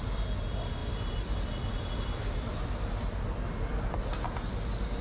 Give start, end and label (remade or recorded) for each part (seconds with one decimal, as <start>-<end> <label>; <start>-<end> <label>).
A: 0.0-5.0 recorded